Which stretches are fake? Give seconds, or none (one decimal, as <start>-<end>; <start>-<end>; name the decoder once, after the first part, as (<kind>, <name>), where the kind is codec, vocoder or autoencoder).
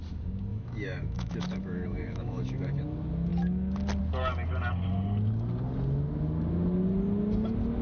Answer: 0.5-2.8 (autoencoder, DAC-VAE)